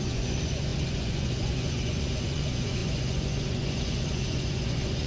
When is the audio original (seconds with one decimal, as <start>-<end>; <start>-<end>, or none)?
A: none